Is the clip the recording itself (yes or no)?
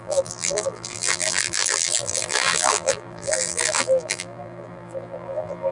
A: no